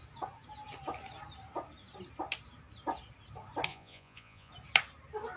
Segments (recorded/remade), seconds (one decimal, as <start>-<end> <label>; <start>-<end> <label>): 0.0-3.7 recorded; 3.7-4.5 remade; 4.5-5.4 recorded